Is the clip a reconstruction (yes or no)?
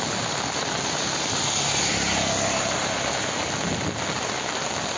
no